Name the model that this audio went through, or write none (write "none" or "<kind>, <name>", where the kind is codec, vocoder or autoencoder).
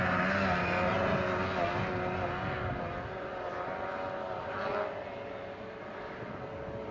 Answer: none